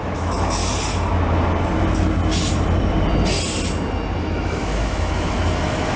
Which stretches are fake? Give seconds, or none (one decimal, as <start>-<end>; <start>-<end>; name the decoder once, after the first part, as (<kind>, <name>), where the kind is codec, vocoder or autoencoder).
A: 0.0-0.6 (autoencoder, DAC-VAE); 4.2-6.0